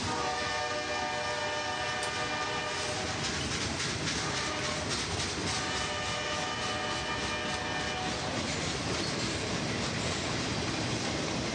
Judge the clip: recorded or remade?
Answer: recorded